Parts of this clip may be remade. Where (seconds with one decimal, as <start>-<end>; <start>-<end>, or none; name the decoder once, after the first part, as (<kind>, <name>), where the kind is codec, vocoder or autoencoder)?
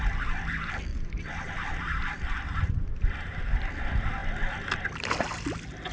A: 0.9-3.8 (vocoder, BigVGAN v2)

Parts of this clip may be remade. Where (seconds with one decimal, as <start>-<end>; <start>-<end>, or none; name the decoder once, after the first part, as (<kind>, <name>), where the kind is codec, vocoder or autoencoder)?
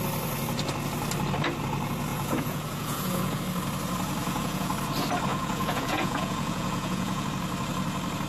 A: 2.1-3.4 (vocoder, Vocos); 4.2-4.7; 5.3-7.3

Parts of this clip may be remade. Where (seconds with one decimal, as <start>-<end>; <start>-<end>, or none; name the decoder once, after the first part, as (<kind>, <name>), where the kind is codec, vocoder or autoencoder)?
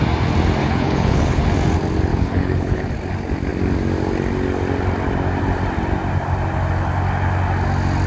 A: 0.6-1.4 (codec, HILCodec); 2.1-2.9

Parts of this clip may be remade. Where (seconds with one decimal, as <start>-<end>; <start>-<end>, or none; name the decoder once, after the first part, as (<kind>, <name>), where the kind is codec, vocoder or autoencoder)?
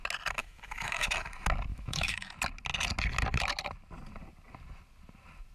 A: 0.4-1.1 (autoencoder, DAC-VAE); 1.7-2.3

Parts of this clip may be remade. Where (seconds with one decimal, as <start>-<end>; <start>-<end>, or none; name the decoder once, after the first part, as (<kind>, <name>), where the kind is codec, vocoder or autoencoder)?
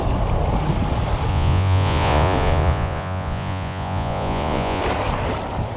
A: 1.3-4.8 (vocoder, Vocos)